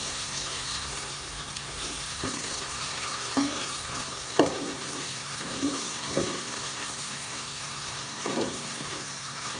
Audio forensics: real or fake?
fake